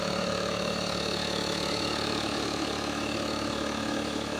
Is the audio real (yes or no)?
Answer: no